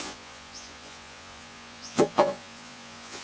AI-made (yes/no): yes